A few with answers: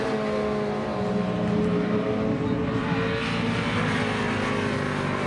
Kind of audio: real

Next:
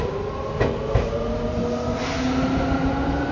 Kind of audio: real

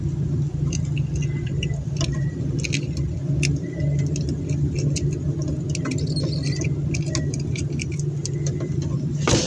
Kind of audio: real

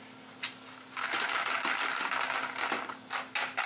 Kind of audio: real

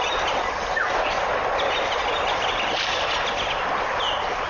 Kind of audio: real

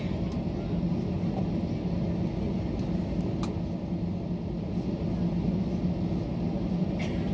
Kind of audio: real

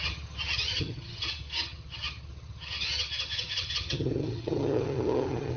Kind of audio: fake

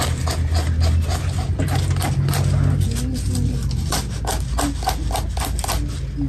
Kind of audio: real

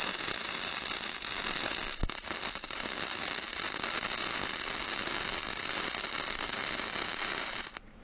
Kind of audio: real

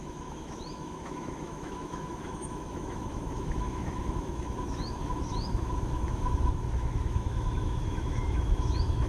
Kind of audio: fake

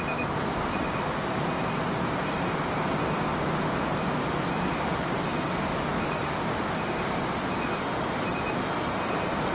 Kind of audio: real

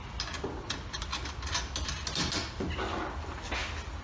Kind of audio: real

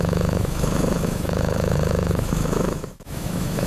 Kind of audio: fake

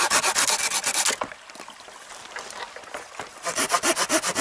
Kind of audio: real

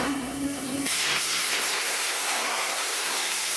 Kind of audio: fake